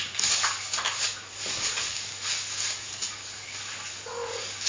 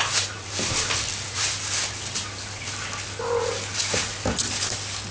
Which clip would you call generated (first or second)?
first